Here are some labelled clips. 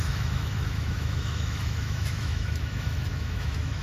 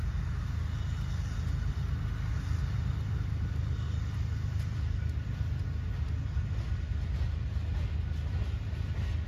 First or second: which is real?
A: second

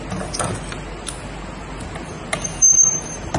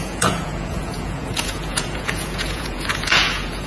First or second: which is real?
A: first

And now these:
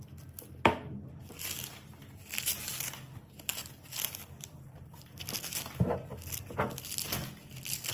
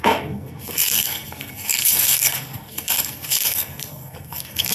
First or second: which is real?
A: first